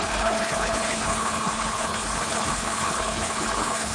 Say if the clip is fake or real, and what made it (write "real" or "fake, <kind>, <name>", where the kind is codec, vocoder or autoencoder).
fake, codec, HILCodec